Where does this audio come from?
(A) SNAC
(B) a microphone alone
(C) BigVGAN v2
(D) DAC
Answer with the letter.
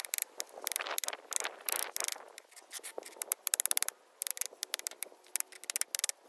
B